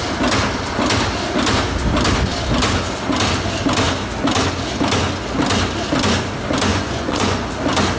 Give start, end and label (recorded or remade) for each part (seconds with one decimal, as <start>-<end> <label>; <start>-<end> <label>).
0.0-6.7 recorded; 6.7-7.5 remade; 7.5-8.0 recorded

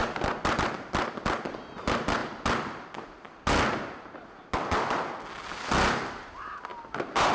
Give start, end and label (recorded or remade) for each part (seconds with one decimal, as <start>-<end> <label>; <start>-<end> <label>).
0.0-7.3 recorded